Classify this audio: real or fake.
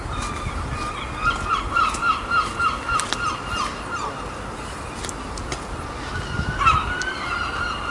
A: real